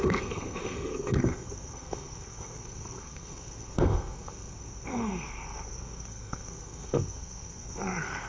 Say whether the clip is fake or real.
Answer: fake